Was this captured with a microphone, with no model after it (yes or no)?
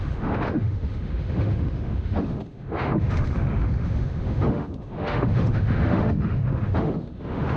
no